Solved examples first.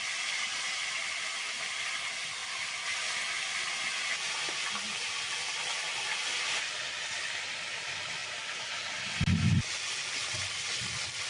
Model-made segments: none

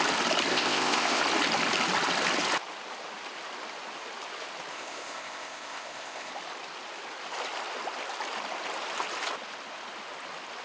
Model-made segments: 0.5-1.2; 4.7-6.3

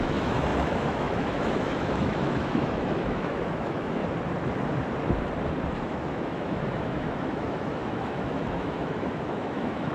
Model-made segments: 0.0-4.0; 5.8-9.9

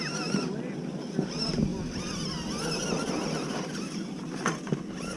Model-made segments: none

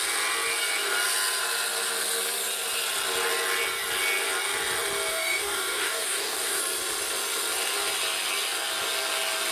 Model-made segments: 5.1-6.6